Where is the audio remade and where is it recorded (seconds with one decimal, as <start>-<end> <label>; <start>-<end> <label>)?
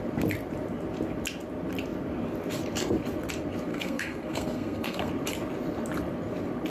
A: 0.0-3.7 recorded; 3.7-5.1 remade; 5.1-6.7 recorded